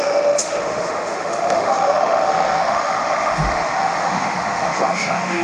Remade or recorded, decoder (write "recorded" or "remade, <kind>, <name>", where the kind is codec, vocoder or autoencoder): remade, autoencoder, DAC-VAE